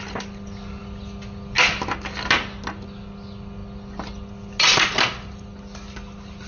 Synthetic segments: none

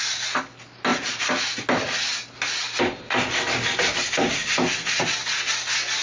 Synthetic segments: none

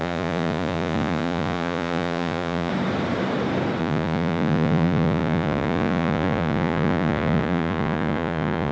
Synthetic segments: 0.0-2.7 (vocoder, Vocos); 3.8-8.7

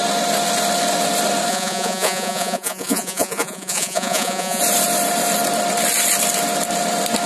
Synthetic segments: 1.5-4.6 (vocoder, Vocos)